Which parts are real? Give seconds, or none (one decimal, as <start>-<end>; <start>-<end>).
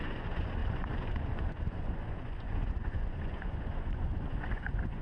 none